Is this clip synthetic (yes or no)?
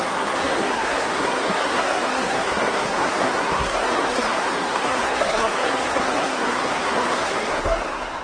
yes